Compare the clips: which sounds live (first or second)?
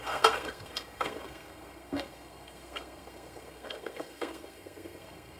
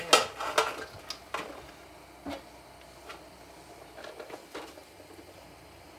second